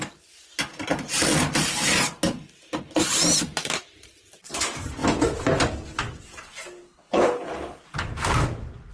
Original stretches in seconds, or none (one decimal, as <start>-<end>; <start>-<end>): 0.0-6.8; 7.8-8.9